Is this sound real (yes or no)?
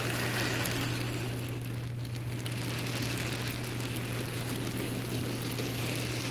yes